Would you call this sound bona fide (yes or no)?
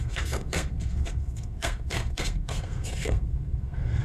no